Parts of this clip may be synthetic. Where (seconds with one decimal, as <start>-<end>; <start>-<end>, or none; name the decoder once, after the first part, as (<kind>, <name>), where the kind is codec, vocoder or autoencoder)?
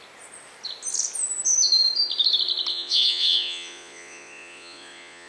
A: 2.7-5.3 (vocoder, Vocos)